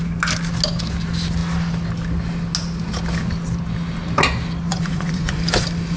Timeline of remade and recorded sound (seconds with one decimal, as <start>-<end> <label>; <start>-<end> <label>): 0.0-4.7 recorded; 4.7-5.4 remade; 5.4-6.0 recorded